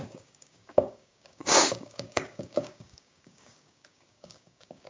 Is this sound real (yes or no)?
no